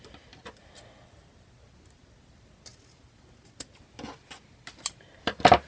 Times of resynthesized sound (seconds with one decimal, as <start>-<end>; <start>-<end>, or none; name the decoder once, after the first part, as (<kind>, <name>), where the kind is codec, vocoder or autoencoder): none